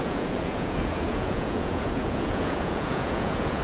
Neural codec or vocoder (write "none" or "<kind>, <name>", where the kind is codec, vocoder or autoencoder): vocoder, Vocos